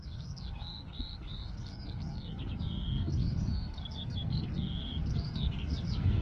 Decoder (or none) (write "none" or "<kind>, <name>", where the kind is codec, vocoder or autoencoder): codec, SNAC